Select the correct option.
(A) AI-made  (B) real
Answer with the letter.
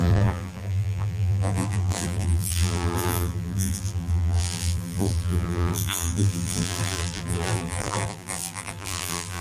A